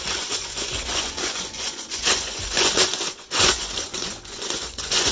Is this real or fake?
fake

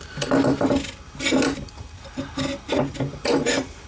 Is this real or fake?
real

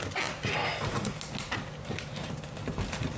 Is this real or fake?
real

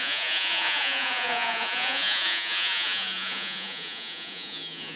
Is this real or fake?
fake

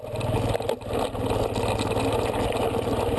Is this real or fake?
real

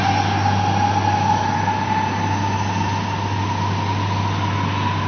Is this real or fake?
real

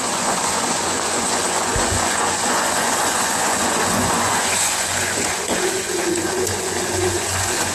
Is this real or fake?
fake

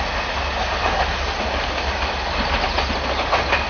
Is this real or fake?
real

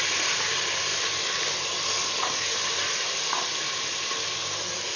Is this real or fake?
real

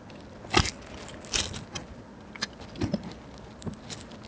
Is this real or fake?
real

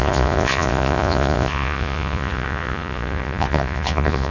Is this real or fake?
fake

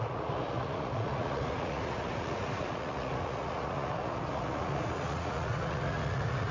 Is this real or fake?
fake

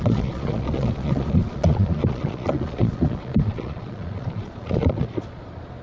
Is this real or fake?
fake